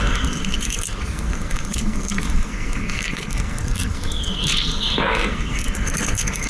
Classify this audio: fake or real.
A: fake